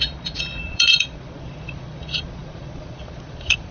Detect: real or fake fake